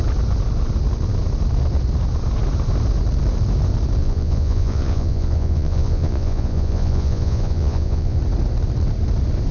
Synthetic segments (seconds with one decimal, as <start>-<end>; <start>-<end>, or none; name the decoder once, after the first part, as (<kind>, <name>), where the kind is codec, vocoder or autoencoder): 4.0-8.2 (vocoder, Vocos)